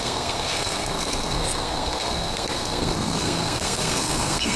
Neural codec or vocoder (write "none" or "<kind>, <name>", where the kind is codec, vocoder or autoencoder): codec, SNAC